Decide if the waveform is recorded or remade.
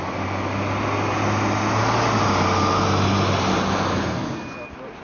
recorded